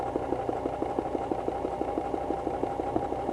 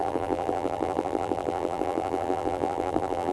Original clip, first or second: first